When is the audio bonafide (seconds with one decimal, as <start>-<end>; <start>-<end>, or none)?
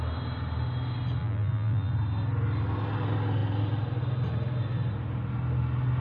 0.0-1.2; 1.9-6.0